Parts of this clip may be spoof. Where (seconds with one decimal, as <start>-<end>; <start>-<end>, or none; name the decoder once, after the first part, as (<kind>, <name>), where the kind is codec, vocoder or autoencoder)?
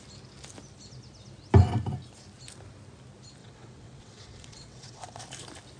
3.4-5.2 (vocoder, WaveNeXt)